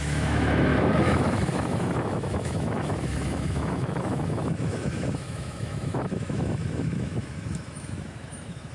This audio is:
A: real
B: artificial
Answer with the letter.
B